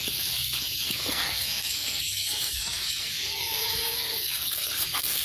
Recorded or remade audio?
remade